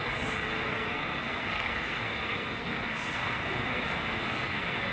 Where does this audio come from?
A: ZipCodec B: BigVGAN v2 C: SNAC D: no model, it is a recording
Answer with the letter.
C